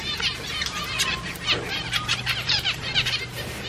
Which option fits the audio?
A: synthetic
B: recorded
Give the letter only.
A